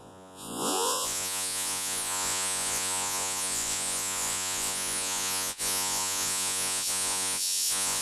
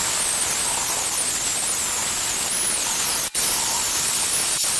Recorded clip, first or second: second